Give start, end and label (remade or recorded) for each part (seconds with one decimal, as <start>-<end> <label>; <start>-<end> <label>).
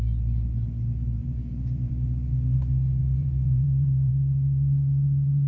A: 0.0-1.2 recorded; 1.2-1.9 remade; 1.9-3.0 recorded; 3.0-4.1 remade; 4.1-5.5 recorded